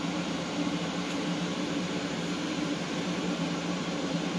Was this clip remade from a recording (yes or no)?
yes